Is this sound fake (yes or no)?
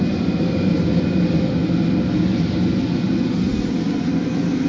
no